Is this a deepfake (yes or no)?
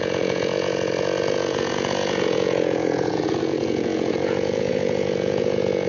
yes